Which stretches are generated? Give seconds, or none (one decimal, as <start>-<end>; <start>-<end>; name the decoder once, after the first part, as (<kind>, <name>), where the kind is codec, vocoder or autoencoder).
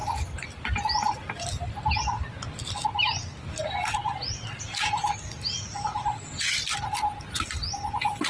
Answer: none